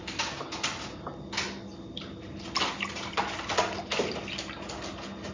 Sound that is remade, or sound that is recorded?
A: recorded